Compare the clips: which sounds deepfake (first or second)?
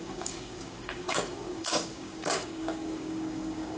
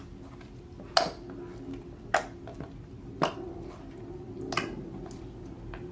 first